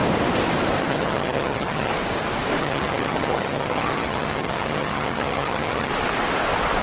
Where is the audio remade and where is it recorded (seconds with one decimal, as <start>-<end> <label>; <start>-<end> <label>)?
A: 0.0-0.8 recorded; 0.8-1.9 remade; 1.9-2.6 recorded; 2.6-5.9 remade; 5.9-6.8 recorded